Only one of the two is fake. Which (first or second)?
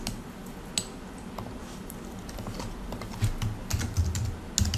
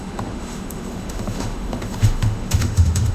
second